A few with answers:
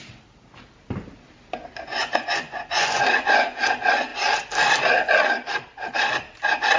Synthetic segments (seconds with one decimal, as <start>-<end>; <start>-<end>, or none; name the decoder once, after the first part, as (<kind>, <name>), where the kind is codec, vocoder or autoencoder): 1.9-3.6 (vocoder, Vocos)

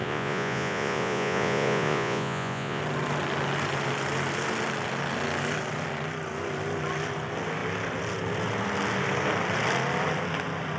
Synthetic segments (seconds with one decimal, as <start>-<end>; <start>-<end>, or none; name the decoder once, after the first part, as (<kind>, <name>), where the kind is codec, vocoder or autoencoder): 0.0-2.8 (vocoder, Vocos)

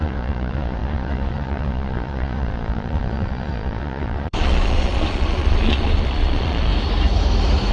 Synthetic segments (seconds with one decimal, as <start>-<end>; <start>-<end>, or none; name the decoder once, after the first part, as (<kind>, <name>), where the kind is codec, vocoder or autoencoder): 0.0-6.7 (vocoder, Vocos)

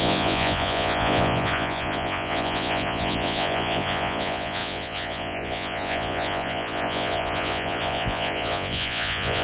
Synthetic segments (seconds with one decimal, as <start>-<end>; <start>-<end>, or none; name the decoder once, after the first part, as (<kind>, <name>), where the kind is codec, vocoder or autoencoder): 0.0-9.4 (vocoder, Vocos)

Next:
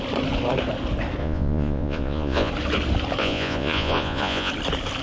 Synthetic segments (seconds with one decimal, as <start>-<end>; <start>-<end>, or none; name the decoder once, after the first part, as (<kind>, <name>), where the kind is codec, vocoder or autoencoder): 1.2-2.5 (vocoder, Vocos); 3.2-4.5

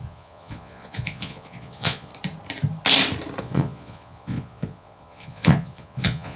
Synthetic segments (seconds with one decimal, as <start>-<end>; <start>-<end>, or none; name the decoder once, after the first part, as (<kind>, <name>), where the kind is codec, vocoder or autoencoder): 0.0-2.1 (vocoder, Vocos); 3.4-6.4